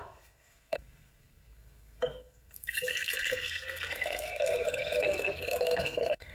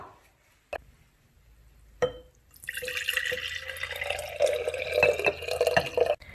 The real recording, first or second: second